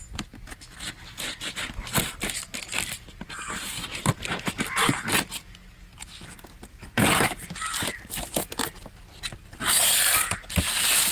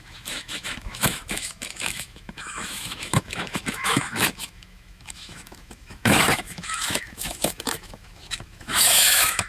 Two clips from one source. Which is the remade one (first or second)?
second